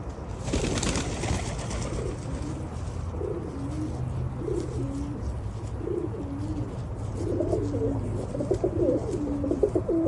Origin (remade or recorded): recorded